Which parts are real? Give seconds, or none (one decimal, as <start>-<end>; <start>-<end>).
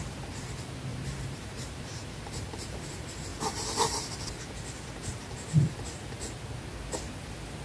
0.0-0.9; 2.9-3.3; 4.4-7.6